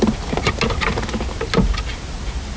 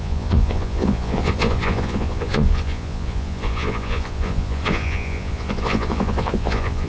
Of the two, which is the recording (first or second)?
first